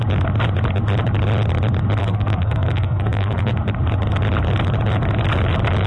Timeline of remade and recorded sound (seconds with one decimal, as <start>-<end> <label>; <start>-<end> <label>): 0.0-2.0 recorded; 2.0-3.5 remade; 3.5-5.9 recorded